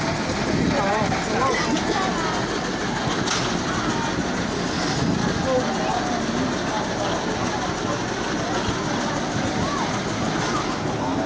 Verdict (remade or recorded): recorded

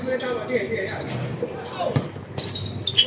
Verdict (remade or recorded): recorded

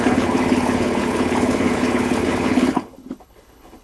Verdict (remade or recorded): remade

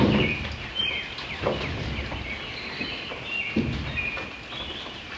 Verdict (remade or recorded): recorded